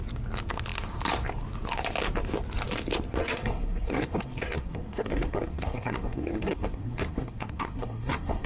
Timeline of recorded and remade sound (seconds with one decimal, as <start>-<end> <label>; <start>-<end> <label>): 0.0-3.2 recorded; 3.2-8.5 remade